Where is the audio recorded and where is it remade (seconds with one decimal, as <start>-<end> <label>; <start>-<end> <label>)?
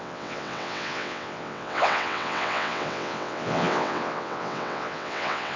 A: 0.0-5.6 remade